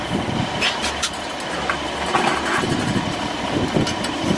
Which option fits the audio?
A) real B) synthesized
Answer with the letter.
B